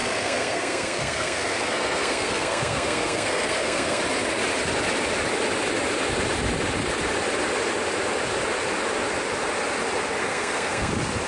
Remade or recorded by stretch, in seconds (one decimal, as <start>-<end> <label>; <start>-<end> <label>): 0.0-4.0 remade; 4.0-10.2 recorded; 10.2-10.9 remade; 10.9-11.3 recorded